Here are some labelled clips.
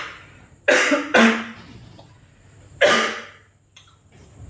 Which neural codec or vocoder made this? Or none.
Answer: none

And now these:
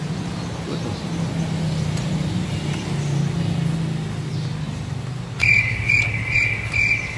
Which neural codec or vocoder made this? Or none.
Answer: none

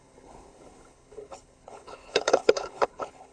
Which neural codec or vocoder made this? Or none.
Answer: codec, HILCodec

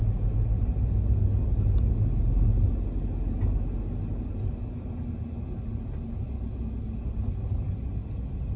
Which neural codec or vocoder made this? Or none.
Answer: none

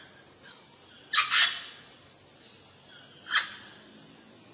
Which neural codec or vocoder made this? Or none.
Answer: none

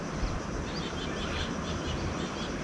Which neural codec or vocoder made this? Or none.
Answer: none